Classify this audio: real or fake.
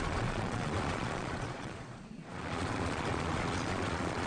fake